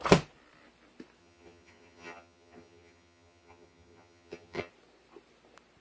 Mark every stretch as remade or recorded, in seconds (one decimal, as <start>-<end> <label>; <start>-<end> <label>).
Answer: 0.0-1.2 recorded; 1.2-4.7 remade; 4.7-5.8 recorded